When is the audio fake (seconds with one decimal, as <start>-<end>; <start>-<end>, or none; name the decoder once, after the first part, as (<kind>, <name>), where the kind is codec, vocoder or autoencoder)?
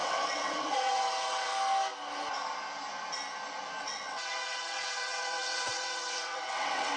0.0-1.5 (vocoder, WaveNeXt); 3.8-7.0